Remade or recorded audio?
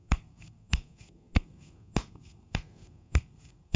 remade